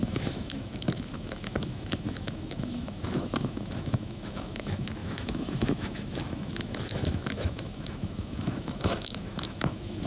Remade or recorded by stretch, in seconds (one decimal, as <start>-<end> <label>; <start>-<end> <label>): 0.0-10.1 remade